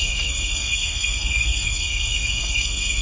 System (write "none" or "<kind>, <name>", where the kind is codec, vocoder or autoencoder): codec, SNAC